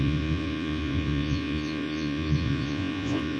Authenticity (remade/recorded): remade